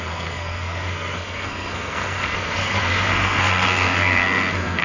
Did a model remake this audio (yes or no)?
yes